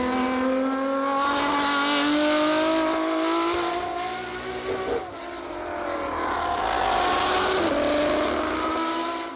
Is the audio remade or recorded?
recorded